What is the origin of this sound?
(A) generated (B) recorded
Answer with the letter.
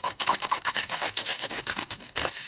A